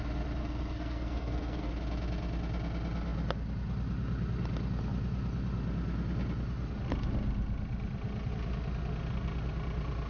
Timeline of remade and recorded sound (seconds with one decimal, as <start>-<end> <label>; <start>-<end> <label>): 0.0-0.4 recorded; 0.4-1.7 remade; 1.7-10.1 recorded